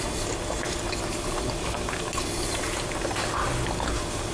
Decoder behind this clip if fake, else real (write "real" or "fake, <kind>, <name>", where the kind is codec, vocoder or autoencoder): real